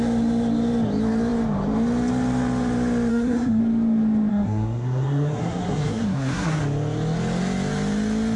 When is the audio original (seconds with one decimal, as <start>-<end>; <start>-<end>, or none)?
0.0-3.1; 3.6-4.3; 6.6-8.4